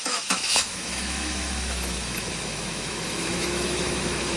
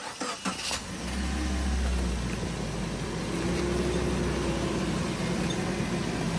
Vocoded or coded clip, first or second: first